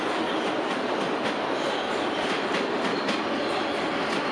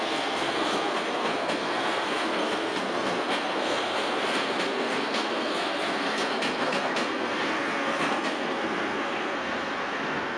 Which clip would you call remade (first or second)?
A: second